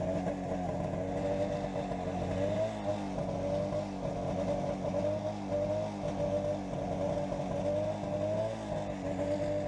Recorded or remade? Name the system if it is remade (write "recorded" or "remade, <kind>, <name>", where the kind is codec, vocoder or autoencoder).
recorded